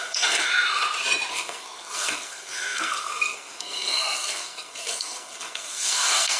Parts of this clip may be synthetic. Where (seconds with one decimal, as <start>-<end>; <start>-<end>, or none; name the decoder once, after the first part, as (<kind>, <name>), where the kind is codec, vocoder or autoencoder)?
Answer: 0.0-0.5 (codec, SNAC); 1.3-6.4